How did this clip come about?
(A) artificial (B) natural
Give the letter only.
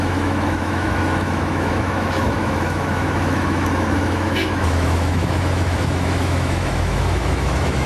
A